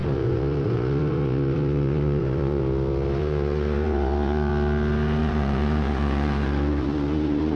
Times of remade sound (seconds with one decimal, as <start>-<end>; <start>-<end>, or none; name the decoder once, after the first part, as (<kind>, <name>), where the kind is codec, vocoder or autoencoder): 0.0-2.6 (vocoder, Vocos); 3.2-4.5; 5.2-7.6